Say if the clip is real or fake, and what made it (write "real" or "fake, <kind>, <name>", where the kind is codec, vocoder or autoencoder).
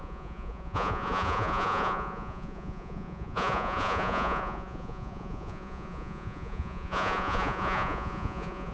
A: fake, vocoder, Vocos